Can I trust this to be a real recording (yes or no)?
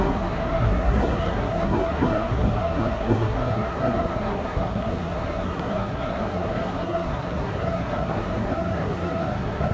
no